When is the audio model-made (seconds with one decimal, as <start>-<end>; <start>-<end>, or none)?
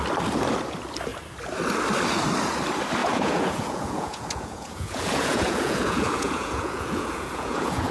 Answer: 3.0-7.9